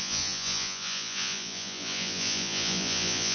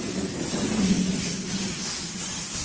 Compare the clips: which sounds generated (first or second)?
first